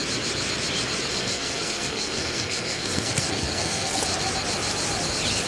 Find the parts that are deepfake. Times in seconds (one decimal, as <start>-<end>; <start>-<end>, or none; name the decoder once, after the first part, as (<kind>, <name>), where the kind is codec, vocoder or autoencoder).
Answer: 1.1-4.0 (codec, SNAC)